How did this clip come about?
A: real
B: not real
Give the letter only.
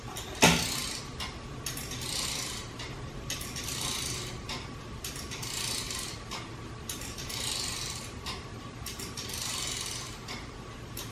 A